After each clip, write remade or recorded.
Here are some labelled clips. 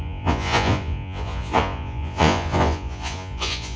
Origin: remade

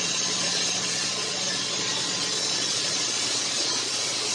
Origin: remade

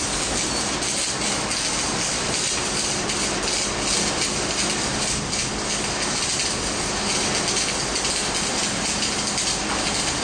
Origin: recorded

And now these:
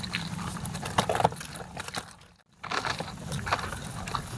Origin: recorded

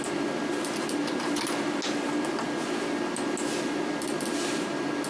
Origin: recorded